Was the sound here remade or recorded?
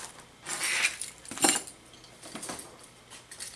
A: recorded